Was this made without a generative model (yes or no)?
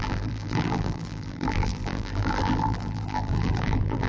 no